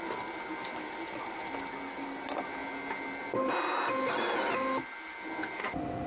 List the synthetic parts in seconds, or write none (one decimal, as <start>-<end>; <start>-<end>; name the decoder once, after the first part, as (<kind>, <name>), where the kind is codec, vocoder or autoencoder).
none